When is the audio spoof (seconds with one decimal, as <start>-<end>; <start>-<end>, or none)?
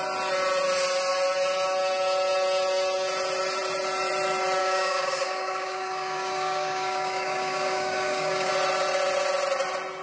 4.6-8.5